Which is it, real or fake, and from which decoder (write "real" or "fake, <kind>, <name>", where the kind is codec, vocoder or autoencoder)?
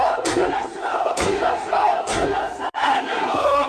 fake, codec, SNAC